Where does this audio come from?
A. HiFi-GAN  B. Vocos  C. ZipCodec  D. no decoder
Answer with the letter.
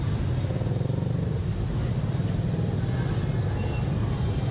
D